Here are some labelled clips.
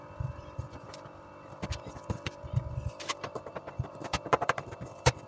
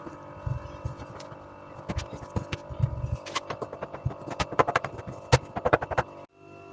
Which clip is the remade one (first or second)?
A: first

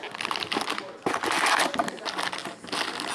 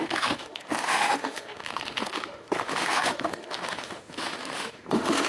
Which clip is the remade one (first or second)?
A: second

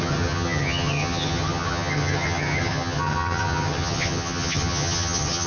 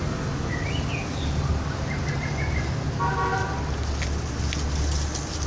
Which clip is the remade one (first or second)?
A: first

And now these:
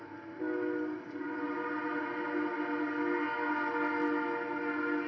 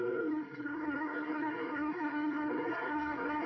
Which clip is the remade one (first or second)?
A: second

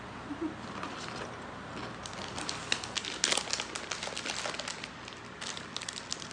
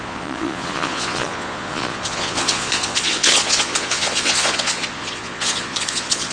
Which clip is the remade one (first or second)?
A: second